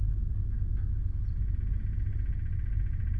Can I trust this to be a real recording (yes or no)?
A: yes